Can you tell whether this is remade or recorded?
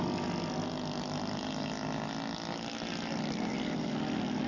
recorded